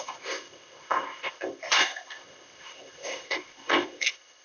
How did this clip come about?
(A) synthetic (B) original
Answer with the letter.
A